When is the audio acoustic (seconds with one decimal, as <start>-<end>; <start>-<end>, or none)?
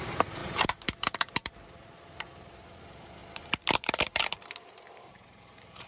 none